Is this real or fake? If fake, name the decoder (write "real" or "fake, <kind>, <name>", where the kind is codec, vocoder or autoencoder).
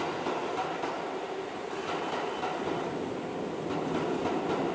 real